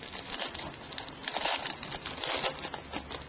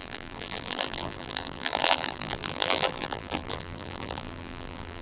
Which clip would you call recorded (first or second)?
first